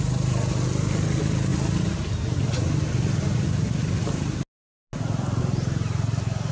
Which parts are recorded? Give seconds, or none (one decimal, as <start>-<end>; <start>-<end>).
0.0-6.5